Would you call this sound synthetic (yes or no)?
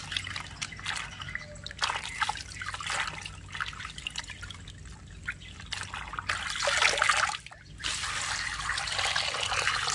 no